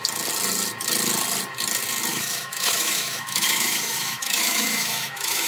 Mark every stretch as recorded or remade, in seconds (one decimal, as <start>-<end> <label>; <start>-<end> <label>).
0.0-2.1 recorded; 2.1-5.5 remade